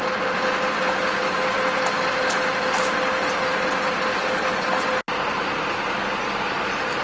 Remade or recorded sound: recorded